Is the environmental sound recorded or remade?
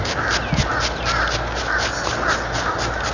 recorded